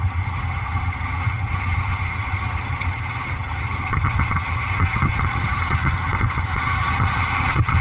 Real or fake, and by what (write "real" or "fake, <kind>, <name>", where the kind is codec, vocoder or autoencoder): fake, vocoder, HiFi-GAN